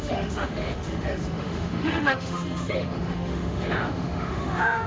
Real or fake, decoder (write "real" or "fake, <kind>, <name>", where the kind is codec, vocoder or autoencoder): fake, autoencoder, DAC-VAE